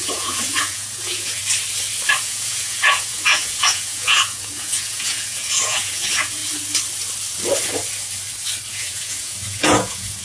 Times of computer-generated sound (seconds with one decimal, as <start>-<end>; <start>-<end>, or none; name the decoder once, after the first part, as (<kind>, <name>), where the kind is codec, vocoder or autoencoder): 0.0-1.4 (vocoder, Vocos); 2.2-6.4; 8.7-10.2